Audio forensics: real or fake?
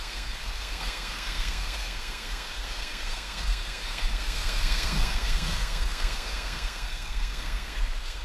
fake